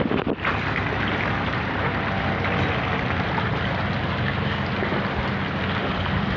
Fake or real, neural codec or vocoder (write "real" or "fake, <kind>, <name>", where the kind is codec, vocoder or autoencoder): real